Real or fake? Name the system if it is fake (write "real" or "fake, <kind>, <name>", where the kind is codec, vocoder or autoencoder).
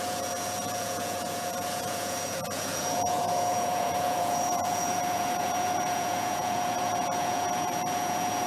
fake, vocoder, Vocos